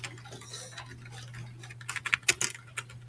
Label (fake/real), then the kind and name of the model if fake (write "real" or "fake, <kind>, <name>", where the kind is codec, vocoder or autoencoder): real